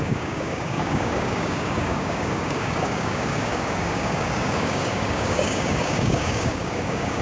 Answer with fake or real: fake